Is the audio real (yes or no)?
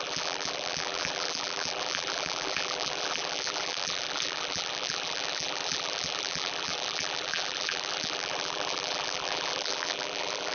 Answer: no